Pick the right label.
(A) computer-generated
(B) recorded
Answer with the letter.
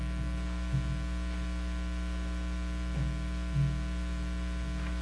B